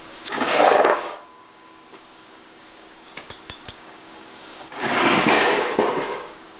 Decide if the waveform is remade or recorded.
remade